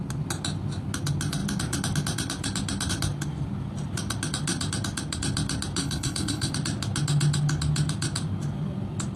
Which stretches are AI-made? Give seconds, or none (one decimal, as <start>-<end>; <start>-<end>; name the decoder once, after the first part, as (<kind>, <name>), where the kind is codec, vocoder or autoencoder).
5.8-6.5 (codec, HILCodec)